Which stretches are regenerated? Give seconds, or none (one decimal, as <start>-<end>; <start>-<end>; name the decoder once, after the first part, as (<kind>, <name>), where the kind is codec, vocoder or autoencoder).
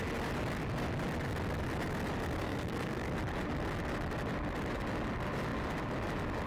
2.4-3.1 (codec, SNAC)